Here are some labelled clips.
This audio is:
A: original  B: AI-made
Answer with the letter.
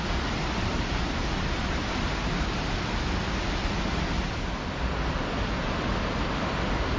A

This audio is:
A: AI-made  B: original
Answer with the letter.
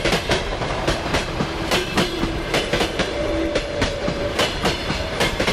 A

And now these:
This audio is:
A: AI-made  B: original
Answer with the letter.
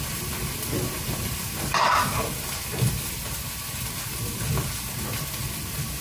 B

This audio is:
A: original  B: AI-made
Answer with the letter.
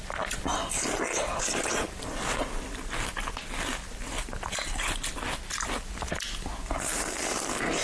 A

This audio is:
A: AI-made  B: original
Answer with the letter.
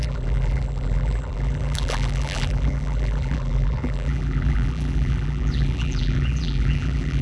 A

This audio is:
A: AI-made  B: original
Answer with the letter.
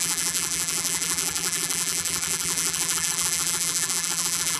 A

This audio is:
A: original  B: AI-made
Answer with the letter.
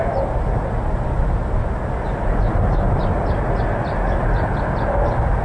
A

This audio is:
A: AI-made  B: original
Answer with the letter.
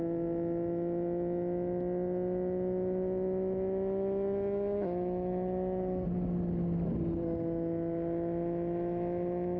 B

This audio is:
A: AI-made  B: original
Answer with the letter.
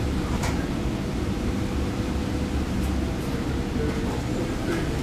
B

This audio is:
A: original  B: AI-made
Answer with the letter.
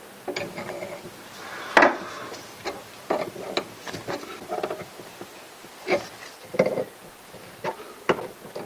A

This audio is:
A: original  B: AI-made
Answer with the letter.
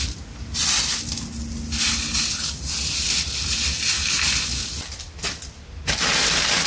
A